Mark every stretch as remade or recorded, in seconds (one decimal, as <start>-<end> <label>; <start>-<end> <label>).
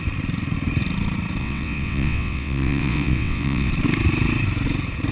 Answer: 0.0-1.4 recorded; 1.4-3.7 remade; 3.7-5.1 recorded